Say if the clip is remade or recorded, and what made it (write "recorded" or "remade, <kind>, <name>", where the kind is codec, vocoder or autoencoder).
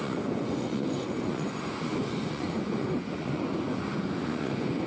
remade, vocoder, Vocos